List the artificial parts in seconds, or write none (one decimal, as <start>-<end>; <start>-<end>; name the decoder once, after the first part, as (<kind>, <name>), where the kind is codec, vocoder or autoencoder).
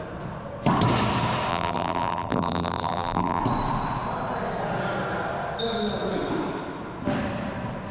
1.5-3.4 (vocoder, BigVGAN v2)